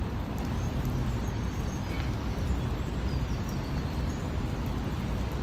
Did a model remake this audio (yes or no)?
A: no